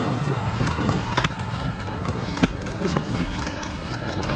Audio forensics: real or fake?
fake